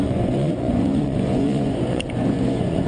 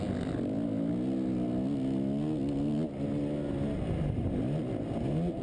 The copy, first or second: first